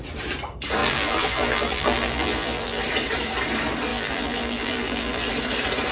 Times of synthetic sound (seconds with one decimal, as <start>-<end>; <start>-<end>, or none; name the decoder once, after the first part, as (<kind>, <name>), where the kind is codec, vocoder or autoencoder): 0.8-2.8 (vocoder, BigVGAN v2); 3.9-5.3